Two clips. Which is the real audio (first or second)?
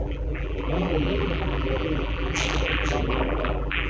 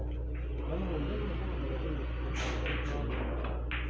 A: second